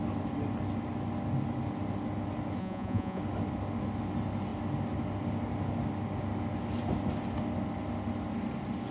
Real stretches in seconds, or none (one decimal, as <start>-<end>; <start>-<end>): 0.0-2.6; 3.2-8.9